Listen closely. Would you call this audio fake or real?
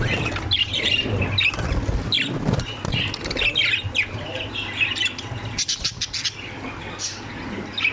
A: real